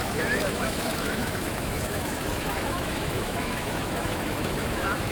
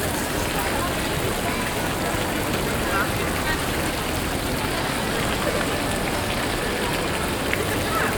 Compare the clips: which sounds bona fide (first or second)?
second